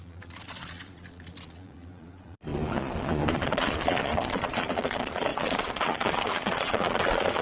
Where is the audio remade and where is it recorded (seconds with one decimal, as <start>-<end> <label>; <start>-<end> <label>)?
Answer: 0.0-7.4 remade